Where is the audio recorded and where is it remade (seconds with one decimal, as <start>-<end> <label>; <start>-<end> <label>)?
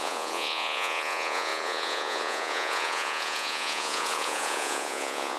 0.0-5.4 remade